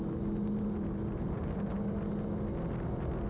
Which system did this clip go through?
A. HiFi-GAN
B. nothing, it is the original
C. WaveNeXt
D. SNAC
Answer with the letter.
B